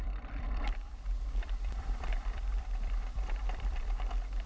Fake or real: fake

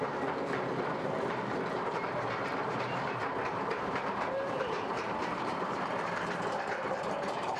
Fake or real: fake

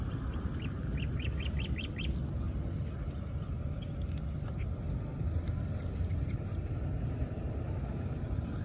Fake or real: real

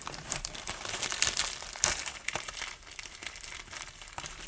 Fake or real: fake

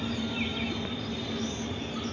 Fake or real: real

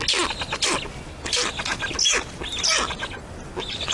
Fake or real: real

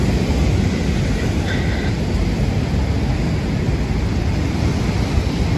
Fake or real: real